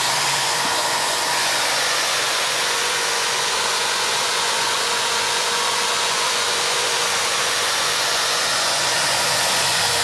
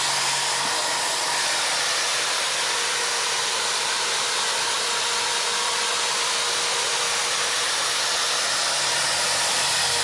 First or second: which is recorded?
second